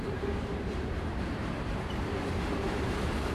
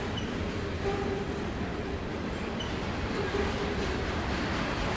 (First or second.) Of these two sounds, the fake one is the first